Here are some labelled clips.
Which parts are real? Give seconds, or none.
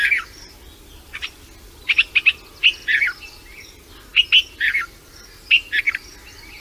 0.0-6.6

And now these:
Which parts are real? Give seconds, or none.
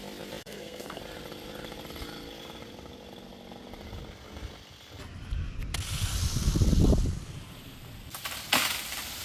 0.0-0.4; 1.0-9.2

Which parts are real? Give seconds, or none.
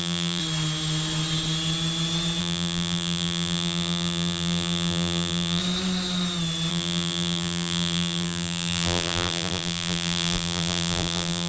0.4-2.4; 5.6-6.7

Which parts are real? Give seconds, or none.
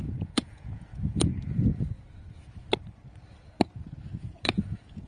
1.3-4.2